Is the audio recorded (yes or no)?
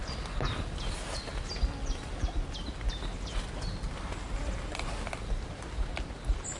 yes